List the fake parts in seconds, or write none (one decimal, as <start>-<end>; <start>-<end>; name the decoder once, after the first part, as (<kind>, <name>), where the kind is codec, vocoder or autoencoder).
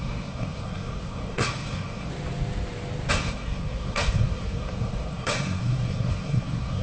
0.0-2.1 (codec, SNAC); 3.1-6.8